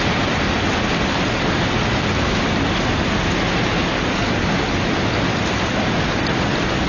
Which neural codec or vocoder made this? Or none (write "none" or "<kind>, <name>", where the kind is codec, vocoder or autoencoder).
none